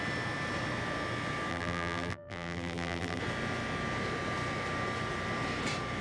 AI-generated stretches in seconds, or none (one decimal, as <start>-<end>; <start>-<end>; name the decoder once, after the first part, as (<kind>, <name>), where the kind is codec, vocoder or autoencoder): 1.5-3.2 (vocoder, BigVGAN v2)

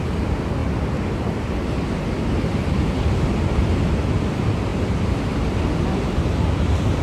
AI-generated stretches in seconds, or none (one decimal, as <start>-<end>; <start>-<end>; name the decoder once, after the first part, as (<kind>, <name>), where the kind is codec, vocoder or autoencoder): none

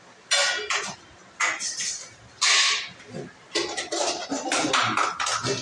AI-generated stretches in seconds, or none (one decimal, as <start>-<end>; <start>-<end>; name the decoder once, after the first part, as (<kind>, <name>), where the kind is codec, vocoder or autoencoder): 0.4-1.4 (vocoder, BigVGAN v2); 3.9-4.7

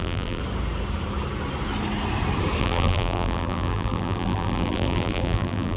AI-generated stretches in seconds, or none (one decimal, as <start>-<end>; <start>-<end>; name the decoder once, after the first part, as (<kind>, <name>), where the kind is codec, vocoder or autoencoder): 0.0-0.4 (vocoder, BigVGAN v2); 2.6-5.8

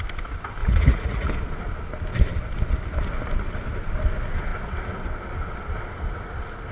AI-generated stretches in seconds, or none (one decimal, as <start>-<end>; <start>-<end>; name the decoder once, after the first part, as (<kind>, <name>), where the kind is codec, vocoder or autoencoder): 0.6-1.3 (vocoder, Vocos)

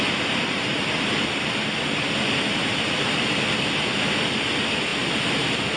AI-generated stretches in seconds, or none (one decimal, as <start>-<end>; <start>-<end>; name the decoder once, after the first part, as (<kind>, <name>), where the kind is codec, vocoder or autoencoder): none

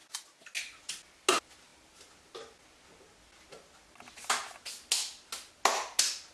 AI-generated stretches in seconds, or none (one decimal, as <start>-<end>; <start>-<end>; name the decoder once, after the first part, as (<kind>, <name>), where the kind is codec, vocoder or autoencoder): none

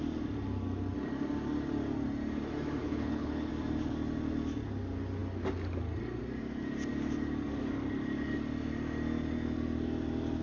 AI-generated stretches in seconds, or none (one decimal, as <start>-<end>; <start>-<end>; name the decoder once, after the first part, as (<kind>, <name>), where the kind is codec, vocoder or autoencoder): 2.8-3.5 (codec, HILCodec)